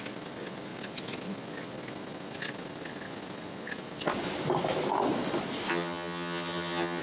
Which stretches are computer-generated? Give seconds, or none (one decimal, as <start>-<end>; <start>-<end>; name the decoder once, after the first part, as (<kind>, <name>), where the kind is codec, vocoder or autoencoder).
5.7-7.0 (vocoder, HiFi-GAN)